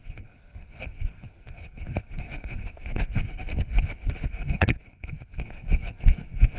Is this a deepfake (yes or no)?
yes